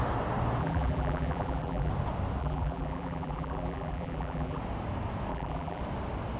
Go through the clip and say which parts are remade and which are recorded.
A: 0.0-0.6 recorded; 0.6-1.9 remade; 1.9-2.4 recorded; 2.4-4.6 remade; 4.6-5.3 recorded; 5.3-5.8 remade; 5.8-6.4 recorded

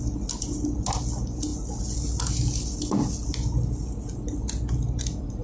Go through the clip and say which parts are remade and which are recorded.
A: 0.0-5.4 recorded

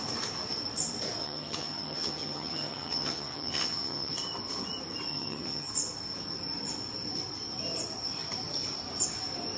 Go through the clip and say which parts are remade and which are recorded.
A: 0.0-1.2 recorded; 1.2-4.1 remade; 4.1-5.1 recorded; 5.1-5.7 remade; 5.7-9.6 recorded

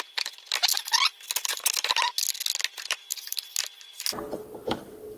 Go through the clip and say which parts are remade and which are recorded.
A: 0.0-5.2 recorded

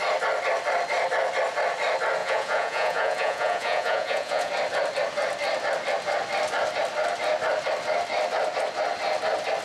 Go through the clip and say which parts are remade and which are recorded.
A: 0.0-2.2 recorded; 2.2-4.5 remade; 4.5-9.6 recorded

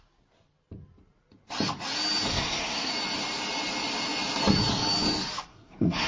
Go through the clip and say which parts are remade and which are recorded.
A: 0.0-2.3 recorded; 2.3-2.9 remade; 2.9-5.5 recorded; 5.5-6.1 remade

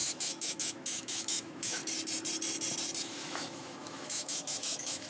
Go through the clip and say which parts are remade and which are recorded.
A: 0.0-1.8 remade; 1.8-3.0 recorded; 3.0-5.1 remade